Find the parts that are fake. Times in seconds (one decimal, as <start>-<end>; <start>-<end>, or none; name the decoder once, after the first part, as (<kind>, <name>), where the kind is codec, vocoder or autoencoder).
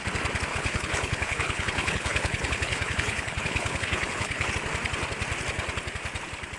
0.5-4.5 (codec, HILCodec)